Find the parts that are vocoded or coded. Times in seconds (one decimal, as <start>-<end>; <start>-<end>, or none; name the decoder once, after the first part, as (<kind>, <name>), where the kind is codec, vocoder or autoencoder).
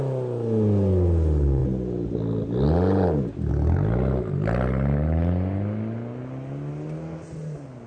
none